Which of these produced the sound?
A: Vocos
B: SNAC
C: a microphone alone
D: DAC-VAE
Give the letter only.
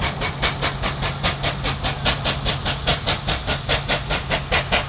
C